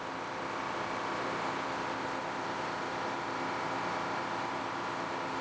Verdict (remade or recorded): recorded